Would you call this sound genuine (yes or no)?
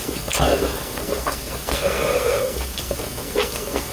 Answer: no